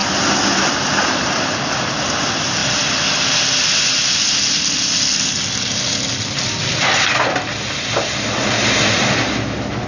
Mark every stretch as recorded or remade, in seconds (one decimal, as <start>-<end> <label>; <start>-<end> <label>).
0.0-9.9 recorded